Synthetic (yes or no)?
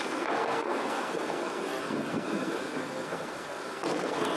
yes